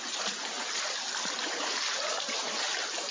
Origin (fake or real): real